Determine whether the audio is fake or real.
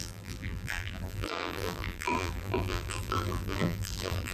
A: fake